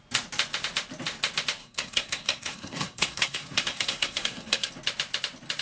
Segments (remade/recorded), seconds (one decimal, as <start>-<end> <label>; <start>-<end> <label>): 0.0-1.6 recorded; 1.6-4.7 remade; 4.7-5.6 recorded